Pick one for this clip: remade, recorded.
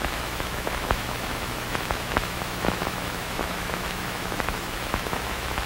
remade